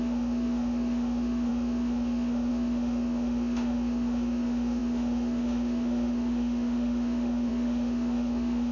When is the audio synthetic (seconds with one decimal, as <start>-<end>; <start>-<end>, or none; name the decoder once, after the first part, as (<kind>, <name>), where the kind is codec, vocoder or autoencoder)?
0.0-8.7 (autoencoder, DAC-VAE)